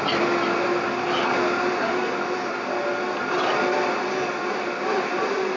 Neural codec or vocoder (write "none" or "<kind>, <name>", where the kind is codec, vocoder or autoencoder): none